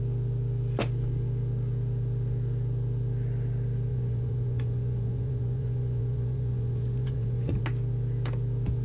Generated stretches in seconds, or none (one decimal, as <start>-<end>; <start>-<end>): 3.9-7.6